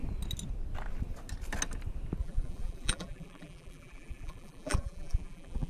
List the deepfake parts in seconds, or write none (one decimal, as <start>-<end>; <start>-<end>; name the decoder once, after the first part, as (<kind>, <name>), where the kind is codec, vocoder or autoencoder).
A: 2.2-5.7 (vocoder, BigVGAN v2)